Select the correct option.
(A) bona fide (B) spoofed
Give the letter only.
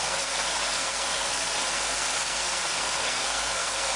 B